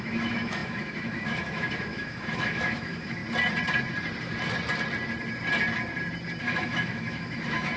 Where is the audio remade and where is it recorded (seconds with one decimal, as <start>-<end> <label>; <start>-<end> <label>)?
0.0-3.2 remade; 3.2-6.4 recorded; 6.4-7.8 remade